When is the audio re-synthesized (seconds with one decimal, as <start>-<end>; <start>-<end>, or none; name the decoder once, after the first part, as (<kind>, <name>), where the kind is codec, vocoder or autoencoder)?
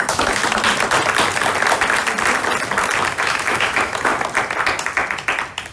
0.0-0.4 (autoencoder, DAC-VAE); 3.2-4.1